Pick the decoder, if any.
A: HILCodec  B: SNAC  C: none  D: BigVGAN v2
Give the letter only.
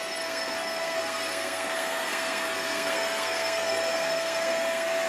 B